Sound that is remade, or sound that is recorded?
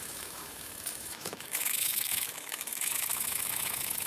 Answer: remade